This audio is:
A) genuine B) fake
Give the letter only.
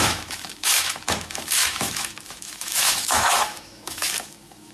B